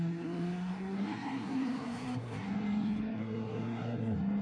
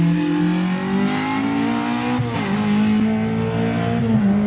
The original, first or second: second